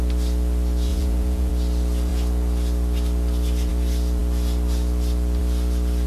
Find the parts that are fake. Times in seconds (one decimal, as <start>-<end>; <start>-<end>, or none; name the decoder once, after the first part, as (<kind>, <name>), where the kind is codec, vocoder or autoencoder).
0.9-1.5 (vocoder, Vocos)